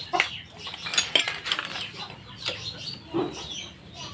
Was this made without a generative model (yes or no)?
yes